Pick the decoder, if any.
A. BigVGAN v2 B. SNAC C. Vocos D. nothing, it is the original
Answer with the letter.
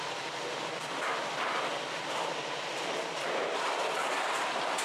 A